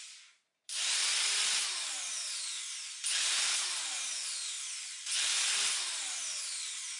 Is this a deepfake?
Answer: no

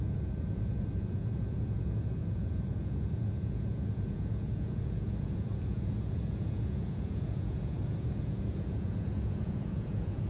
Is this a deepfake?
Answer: yes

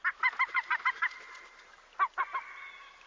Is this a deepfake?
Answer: no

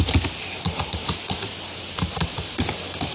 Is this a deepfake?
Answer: no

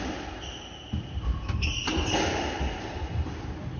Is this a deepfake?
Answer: no